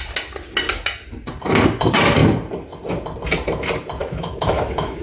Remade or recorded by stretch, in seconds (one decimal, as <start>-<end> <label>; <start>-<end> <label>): 0.0-4.0 recorded; 4.0-5.0 remade